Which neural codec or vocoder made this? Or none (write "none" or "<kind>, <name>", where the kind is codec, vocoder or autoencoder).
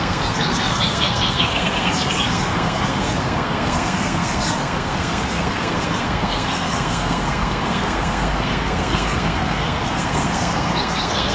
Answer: codec, SNAC